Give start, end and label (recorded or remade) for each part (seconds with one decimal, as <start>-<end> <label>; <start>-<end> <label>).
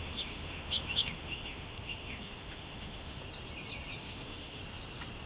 0.0-3.2 remade; 3.2-4.0 recorded; 4.0-4.6 remade; 4.6-5.3 recorded